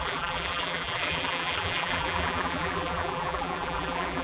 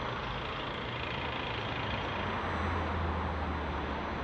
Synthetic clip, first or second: first